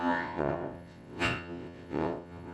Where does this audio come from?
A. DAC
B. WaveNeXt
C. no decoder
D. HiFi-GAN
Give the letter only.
B